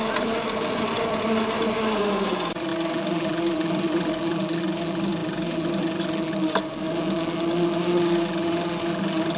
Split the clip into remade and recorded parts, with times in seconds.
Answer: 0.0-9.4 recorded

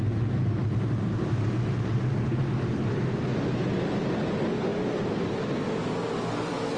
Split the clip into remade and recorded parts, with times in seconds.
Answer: 0.0-2.8 recorded; 2.8-3.4 remade; 3.4-6.8 recorded

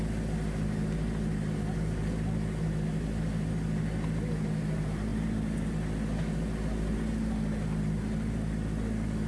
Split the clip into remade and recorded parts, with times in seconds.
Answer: 0.0-9.3 recorded

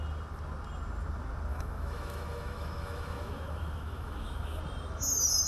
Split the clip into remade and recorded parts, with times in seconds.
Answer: 0.0-1.5 recorded; 1.5-4.6 remade; 4.6-5.5 recorded

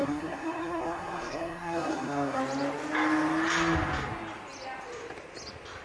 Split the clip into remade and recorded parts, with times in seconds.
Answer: 0.0-2.4 remade; 2.4-5.8 recorded

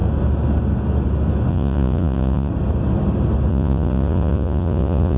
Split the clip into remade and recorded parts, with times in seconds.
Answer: 0.0-1.5 recorded; 1.5-2.5 remade; 2.5-3.5 recorded; 3.5-5.2 remade

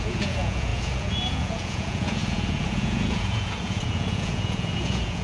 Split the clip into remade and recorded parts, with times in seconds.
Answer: 0.0-5.2 remade